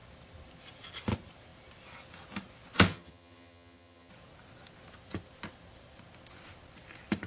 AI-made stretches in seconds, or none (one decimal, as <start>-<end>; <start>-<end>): 2.9-4.1